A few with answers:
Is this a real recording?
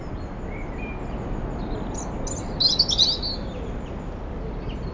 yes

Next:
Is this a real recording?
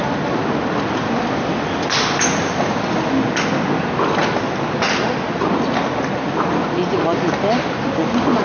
yes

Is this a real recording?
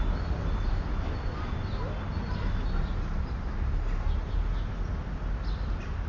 yes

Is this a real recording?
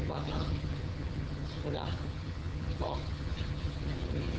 no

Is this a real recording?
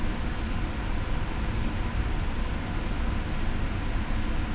yes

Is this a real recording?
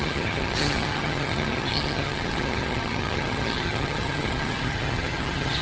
no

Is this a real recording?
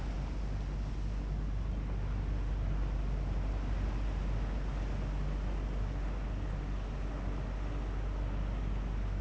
yes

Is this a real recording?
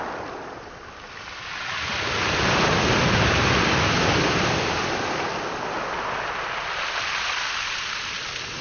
yes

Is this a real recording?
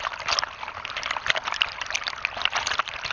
yes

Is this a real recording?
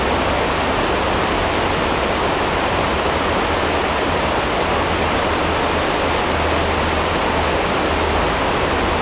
yes